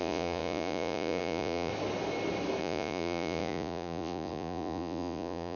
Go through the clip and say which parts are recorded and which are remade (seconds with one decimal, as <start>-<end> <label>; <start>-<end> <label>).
0.0-1.7 remade; 1.7-2.6 recorded; 2.6-5.6 remade